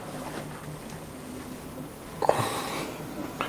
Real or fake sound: real